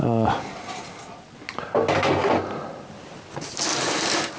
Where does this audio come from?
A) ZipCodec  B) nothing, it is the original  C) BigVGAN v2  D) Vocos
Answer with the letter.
B